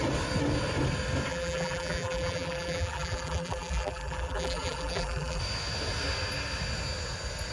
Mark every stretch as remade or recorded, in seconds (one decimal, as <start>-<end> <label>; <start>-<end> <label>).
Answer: 0.0-1.3 recorded; 1.3-5.4 remade; 5.4-7.5 recorded